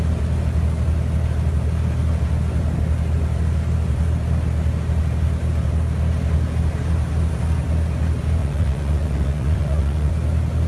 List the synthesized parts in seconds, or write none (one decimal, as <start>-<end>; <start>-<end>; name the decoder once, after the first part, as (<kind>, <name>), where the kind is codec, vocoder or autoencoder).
8.4-10.1 (vocoder, Vocos)

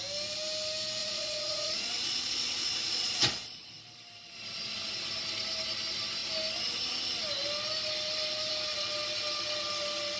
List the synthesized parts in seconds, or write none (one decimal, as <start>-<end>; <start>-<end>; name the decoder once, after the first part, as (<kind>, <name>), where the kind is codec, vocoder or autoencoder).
1.0-3.7 (vocoder, Vocos)

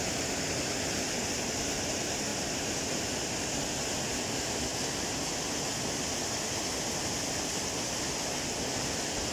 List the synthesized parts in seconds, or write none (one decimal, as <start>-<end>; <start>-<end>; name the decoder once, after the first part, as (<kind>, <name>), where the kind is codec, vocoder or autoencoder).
none

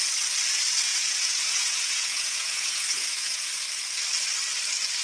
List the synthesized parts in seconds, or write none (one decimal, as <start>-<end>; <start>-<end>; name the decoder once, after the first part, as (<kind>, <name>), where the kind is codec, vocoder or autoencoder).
0.9-3.5 (vocoder, Vocos)

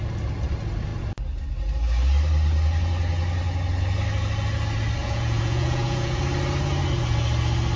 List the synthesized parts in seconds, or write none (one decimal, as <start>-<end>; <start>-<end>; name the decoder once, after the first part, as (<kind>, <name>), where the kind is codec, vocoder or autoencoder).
5.0-6.2 (vocoder, Vocos)

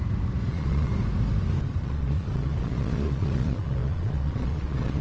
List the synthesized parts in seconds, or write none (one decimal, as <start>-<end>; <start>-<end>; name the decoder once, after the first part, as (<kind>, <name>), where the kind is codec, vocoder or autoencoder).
0.5-0.9 (vocoder, Vocos); 1.8-5.0